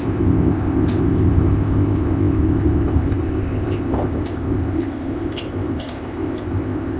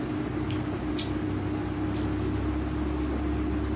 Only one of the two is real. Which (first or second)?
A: second